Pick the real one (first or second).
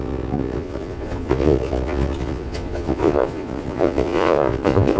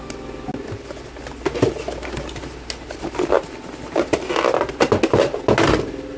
second